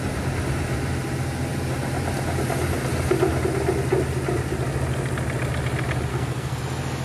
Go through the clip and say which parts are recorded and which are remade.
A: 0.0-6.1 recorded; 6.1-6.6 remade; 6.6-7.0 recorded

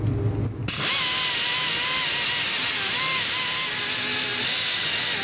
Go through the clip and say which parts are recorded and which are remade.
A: 0.0-5.2 recorded